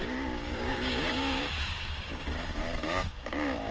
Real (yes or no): no